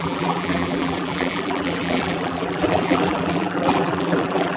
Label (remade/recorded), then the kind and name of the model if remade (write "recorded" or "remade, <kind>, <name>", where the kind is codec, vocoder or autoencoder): remade, vocoder, BigVGAN v2